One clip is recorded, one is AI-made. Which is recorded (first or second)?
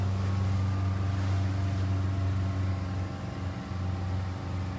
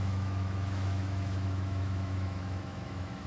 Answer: first